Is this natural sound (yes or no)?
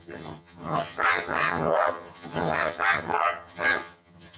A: no